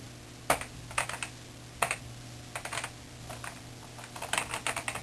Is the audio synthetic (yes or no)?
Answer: no